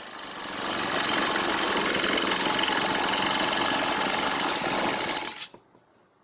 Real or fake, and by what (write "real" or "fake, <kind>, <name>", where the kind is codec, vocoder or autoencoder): real